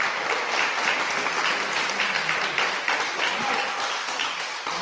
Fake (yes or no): no